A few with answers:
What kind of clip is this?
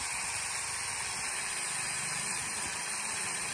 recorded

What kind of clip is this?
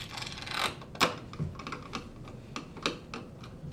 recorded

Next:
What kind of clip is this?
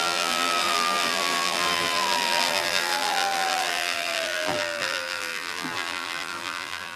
remade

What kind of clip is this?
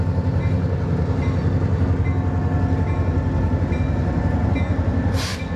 recorded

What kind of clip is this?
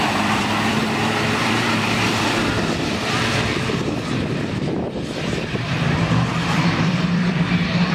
remade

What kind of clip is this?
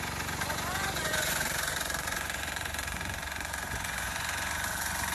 remade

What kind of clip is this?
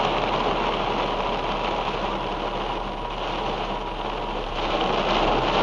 recorded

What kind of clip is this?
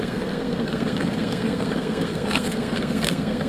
remade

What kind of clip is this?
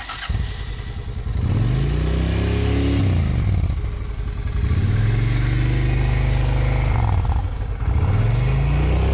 recorded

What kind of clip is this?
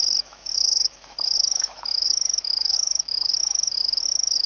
remade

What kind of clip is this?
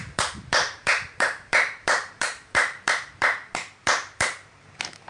remade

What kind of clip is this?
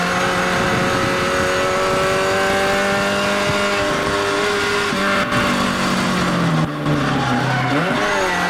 recorded